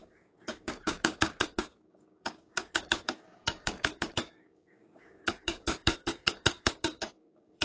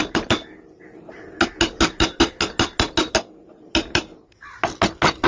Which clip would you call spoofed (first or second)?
first